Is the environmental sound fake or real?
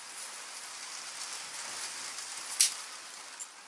real